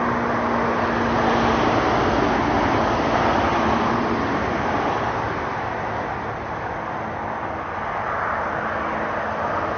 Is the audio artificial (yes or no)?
no